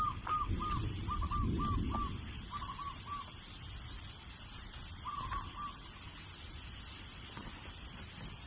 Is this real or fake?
real